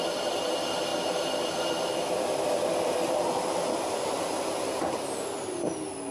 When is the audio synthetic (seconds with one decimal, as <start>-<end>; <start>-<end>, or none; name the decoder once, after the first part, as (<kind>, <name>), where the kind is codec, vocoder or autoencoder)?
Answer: none